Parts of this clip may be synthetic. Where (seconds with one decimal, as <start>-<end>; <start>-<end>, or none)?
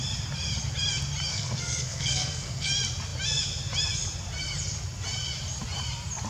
1.3-2.7